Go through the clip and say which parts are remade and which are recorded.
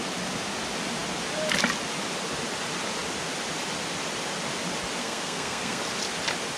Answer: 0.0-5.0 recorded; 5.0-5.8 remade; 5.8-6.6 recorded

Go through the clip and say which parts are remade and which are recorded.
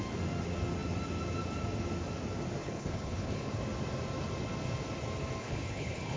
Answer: 0.0-2.6 recorded; 2.6-3.5 remade; 3.5-5.4 recorded; 5.4-6.2 remade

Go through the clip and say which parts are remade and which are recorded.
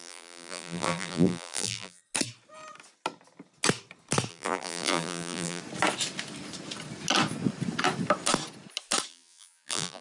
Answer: 0.0-2.0 remade; 2.0-4.3 recorded; 4.3-5.6 remade; 5.6-9.1 recorded; 9.1-10.0 remade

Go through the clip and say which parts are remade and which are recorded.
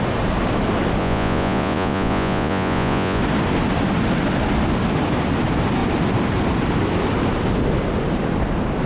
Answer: 0.0-1.0 recorded; 1.0-3.2 remade; 3.2-8.9 recorded